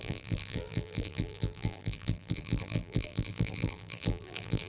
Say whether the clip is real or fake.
fake